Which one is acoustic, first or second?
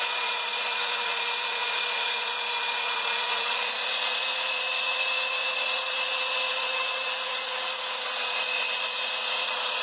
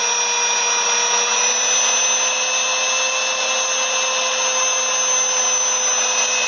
second